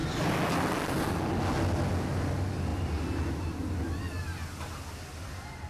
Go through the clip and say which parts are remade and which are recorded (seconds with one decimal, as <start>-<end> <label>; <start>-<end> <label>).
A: 0.0-5.7 recorded